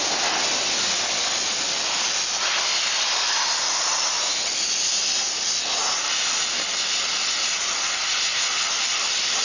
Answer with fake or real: real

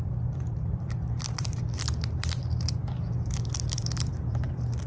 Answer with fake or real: fake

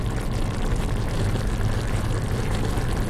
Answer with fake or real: real